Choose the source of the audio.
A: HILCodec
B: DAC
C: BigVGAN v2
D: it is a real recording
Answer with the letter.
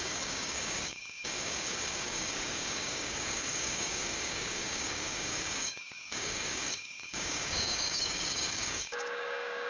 B